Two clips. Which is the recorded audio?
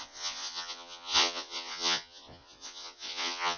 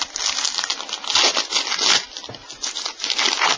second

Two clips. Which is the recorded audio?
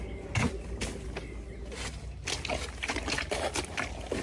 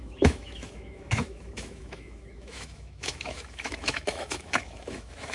first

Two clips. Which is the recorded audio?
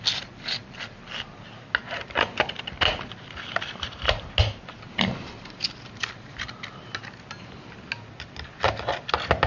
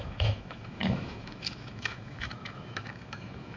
first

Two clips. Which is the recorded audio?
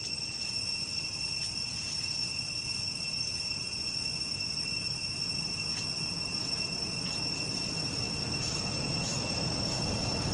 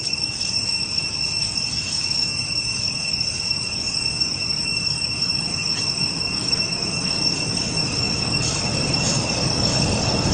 first